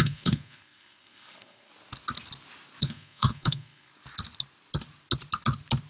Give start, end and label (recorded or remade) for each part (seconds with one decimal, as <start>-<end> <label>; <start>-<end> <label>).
0.0-1.7 remade; 1.7-2.8 recorded; 2.8-3.9 remade; 3.9-5.9 recorded